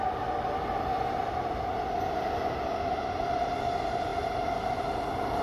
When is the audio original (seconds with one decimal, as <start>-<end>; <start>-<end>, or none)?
0.0-5.4